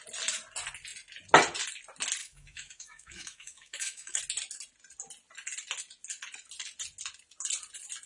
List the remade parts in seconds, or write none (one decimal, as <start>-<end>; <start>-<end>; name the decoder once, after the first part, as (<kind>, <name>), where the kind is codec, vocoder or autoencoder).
2.2-4.2 (autoencoder, DAC-VAE)